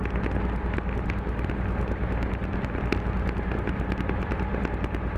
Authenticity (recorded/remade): recorded